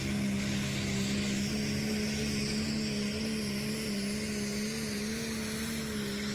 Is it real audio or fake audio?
real